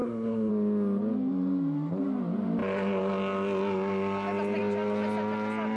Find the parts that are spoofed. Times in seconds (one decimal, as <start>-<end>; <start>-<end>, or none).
0.0-0.5